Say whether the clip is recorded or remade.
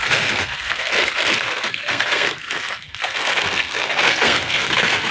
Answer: remade